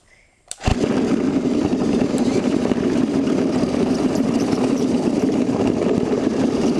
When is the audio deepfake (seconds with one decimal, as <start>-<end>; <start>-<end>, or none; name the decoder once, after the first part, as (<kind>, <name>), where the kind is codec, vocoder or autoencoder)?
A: 0.0-0.7 (vocoder, BigVGAN v2); 1.8-6.8